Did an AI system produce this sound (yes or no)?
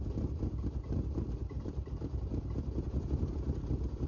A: yes